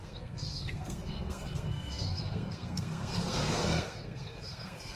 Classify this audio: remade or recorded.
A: remade